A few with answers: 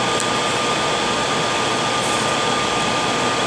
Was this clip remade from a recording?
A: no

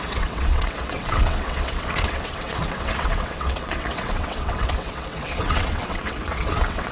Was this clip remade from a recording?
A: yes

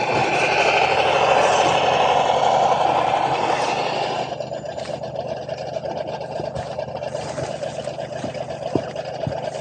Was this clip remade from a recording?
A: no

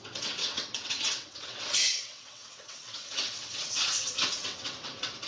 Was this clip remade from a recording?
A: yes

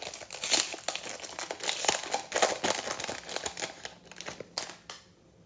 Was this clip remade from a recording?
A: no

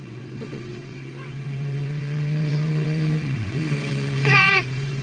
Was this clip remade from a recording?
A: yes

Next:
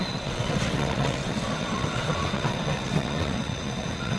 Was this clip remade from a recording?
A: yes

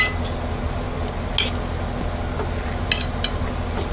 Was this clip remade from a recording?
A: no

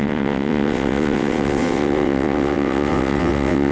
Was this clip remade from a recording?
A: yes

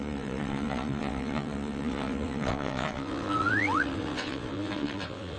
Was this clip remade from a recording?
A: yes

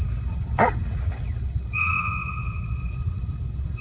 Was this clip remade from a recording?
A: yes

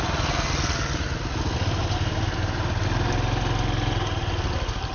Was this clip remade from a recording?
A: no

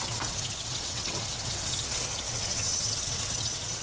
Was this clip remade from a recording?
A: yes